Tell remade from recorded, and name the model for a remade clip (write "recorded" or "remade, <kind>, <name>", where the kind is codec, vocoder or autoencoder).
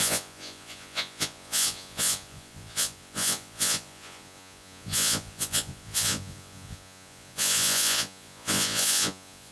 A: remade, vocoder, Vocos